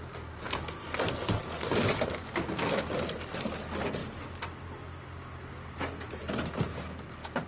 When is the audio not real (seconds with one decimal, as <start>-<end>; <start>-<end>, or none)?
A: none